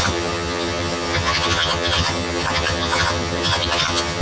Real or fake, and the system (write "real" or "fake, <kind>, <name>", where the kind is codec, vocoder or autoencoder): fake, vocoder, HiFi-GAN